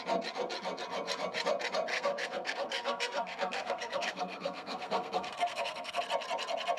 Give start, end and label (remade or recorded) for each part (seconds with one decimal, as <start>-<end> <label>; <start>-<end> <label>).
0.0-1.9 recorded; 1.9-6.0 remade; 6.0-6.8 recorded